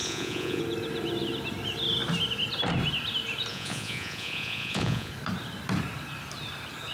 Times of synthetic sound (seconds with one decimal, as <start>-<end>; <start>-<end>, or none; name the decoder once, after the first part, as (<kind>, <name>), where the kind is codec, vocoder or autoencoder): 0.0-0.6 (vocoder, Vocos); 3.5-5.1